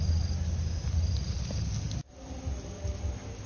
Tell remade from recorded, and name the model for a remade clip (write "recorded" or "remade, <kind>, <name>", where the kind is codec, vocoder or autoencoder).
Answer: recorded